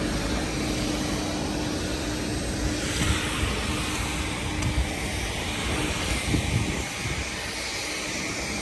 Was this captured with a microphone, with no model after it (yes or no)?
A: yes